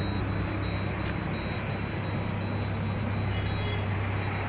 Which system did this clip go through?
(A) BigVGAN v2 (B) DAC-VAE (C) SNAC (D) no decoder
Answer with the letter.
D